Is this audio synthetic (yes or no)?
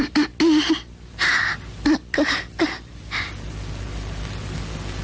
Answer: no